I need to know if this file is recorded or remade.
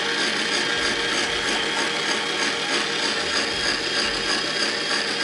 recorded